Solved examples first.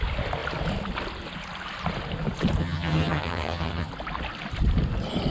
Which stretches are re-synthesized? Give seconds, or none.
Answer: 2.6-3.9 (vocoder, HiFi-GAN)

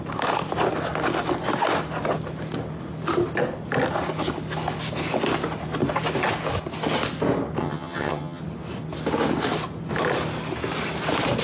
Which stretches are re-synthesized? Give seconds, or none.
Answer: 7.6-8.4 (vocoder, HiFi-GAN)

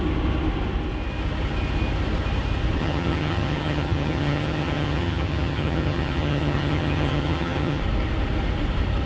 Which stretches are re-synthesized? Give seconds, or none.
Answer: 2.8-7.8 (vocoder, HiFi-GAN)

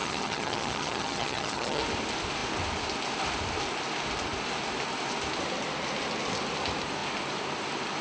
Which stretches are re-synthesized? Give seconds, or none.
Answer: 0.0-1.8 (vocoder, HiFi-GAN)

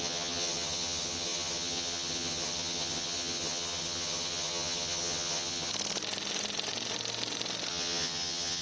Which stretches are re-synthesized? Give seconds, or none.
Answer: 0.0-5.7 (vocoder, HiFi-GAN); 7.7-8.6